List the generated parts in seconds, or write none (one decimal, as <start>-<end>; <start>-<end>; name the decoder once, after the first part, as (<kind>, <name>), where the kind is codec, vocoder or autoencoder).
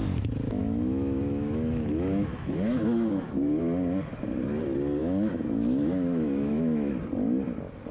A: 0.6-3.6 (autoencoder, DAC-VAE); 5.0-6.9